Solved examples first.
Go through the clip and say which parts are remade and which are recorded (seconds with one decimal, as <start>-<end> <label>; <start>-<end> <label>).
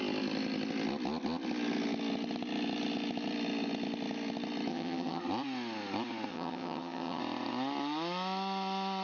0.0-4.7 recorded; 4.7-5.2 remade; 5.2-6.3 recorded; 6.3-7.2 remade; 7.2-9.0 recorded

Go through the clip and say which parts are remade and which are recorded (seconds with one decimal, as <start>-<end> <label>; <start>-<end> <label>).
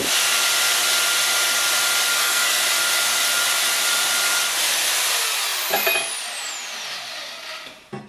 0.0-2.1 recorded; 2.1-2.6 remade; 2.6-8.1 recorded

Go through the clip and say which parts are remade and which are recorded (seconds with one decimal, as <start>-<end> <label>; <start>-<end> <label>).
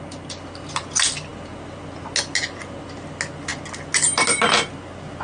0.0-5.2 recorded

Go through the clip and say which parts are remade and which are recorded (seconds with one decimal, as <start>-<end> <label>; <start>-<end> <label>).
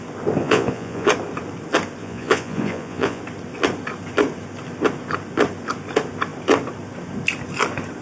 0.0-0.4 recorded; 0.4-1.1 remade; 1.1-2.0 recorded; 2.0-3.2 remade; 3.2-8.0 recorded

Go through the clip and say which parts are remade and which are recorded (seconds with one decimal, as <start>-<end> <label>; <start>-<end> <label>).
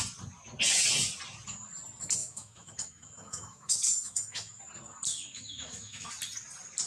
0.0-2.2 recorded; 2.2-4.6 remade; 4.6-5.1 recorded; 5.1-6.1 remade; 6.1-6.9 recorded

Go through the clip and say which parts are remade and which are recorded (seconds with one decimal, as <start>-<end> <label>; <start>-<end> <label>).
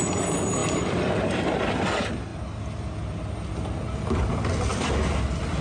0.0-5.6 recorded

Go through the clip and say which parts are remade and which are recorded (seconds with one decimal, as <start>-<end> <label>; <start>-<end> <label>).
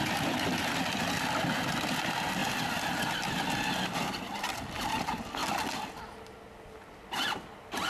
0.0-7.9 recorded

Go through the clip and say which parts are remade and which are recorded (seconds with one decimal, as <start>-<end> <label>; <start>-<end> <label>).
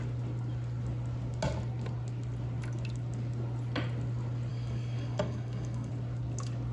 0.0-4.5 recorded; 4.5-5.9 remade; 5.9-6.7 recorded